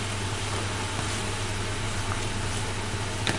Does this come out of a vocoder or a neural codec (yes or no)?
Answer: no